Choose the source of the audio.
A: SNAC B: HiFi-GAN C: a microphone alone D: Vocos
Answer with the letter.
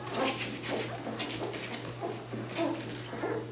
C